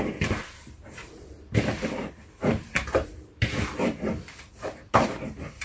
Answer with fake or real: fake